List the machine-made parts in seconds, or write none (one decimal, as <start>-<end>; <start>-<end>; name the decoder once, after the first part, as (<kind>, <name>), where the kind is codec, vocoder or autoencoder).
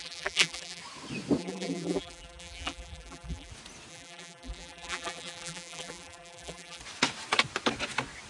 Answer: 0.0-0.8 (vocoder, BigVGAN v2); 1.4-3.5; 3.9-6.8